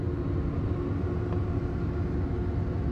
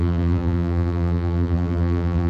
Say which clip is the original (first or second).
first